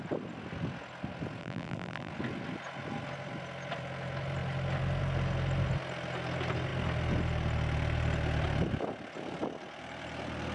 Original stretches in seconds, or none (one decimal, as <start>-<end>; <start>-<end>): 0.0-1.4; 2.1-10.5